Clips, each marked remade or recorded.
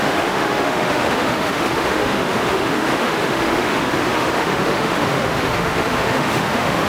remade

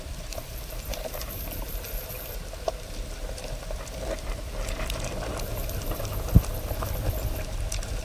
remade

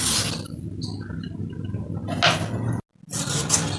recorded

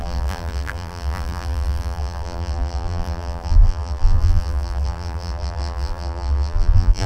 remade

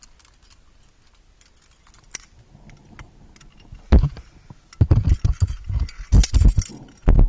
recorded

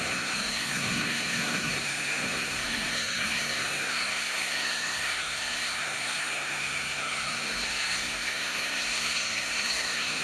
remade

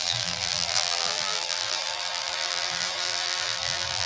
remade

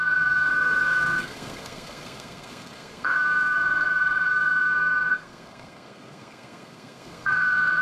remade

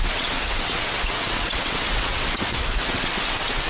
remade